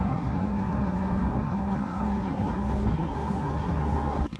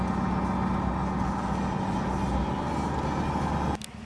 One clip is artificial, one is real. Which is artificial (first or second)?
first